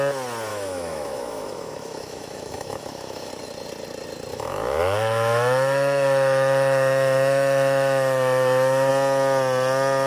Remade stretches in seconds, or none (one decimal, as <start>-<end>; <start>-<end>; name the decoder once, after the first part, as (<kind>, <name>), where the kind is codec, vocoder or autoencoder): 0.5-3.3 (autoencoder, DAC-VAE); 4.3-8.9